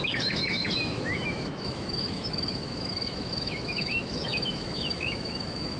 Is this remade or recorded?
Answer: remade